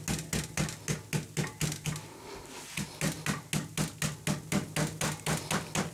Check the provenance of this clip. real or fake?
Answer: real